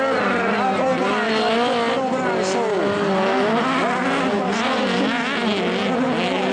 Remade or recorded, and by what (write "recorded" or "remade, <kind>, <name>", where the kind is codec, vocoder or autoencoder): recorded